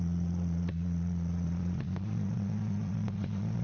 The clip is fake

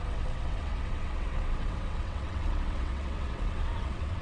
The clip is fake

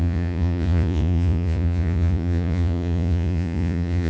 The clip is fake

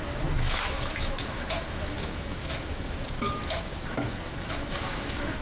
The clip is fake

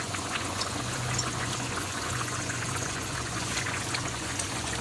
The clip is fake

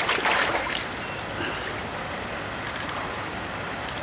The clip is real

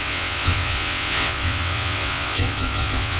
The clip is fake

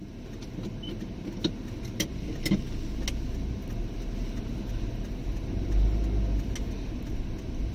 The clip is real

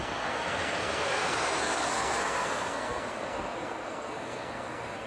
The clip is fake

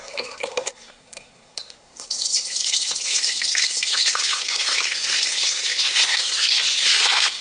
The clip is fake